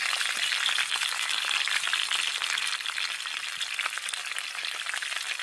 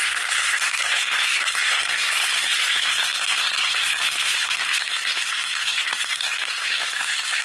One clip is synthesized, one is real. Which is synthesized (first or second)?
second